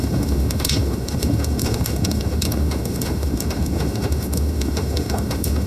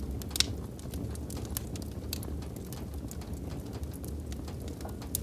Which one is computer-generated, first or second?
first